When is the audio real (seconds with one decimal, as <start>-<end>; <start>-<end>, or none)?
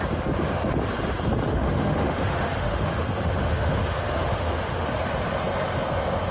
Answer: 0.0-1.5; 4.9-6.3